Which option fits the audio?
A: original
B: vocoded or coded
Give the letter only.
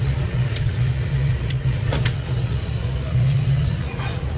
B